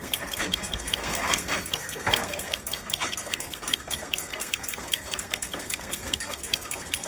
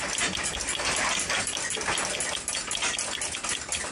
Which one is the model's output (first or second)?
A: first